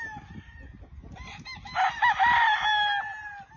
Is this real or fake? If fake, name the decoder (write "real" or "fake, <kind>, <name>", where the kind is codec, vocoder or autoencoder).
real